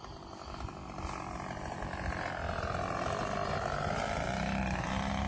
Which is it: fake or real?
real